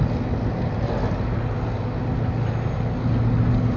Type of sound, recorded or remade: recorded